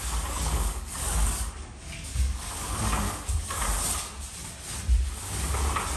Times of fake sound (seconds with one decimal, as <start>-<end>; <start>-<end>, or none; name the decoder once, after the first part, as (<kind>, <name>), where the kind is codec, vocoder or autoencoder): 0.0-3.6 (codec, DAC)